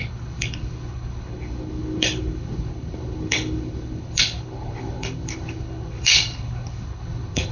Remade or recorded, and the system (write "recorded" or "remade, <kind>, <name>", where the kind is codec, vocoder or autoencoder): remade, codec, HILCodec